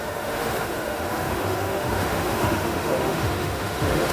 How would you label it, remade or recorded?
remade